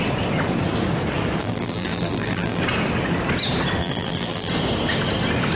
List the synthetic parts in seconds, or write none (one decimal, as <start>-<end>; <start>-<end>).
1.4-2.6; 3.8-4.5